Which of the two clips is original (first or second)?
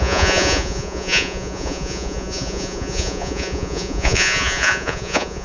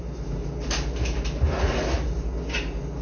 second